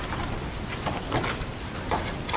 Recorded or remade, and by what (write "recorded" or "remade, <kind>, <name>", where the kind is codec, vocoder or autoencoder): remade, vocoder, BigVGAN v2